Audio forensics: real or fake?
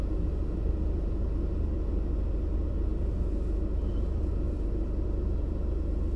real